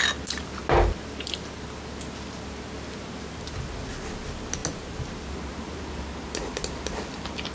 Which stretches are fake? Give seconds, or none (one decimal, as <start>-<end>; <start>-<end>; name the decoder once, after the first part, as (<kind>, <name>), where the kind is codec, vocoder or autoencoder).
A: none